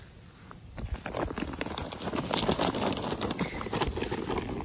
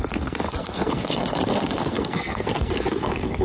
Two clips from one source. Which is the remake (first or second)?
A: second